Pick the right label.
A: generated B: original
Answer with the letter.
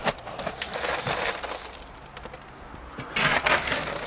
B